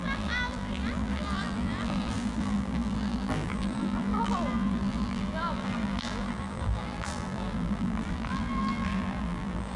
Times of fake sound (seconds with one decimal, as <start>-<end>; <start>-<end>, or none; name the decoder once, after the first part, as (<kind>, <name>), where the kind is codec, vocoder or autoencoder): 0.0-9.8 (vocoder, BigVGAN v2)